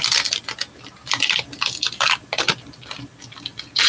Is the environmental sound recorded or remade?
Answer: recorded